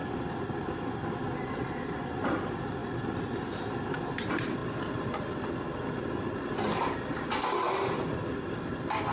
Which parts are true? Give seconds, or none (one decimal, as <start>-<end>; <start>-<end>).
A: 0.0-9.1